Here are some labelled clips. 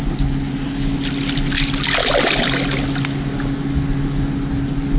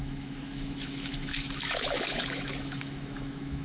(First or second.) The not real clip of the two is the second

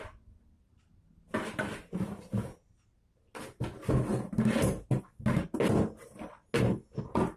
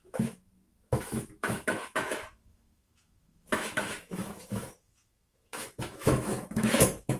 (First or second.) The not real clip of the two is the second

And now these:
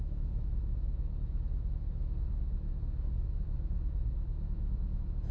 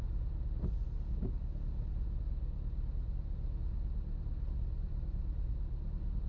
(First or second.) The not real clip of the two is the first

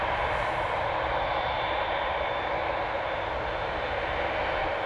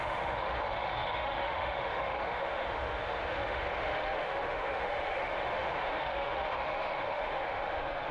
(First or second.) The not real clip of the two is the second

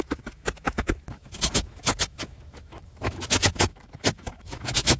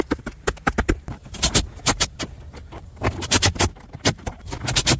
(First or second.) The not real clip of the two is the first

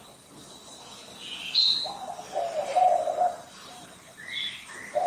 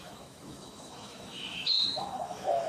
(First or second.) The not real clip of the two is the second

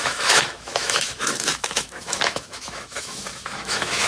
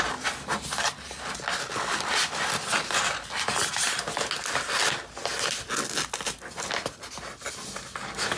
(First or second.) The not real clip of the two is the first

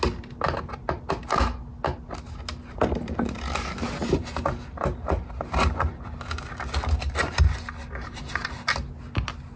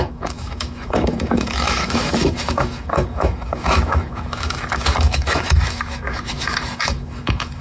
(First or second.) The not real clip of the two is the second